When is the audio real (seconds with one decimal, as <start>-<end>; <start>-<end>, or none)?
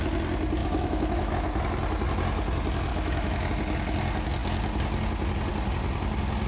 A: 0.0-0.6; 1.3-2.9; 3.5-6.5